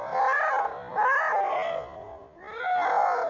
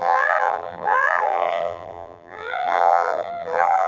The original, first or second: first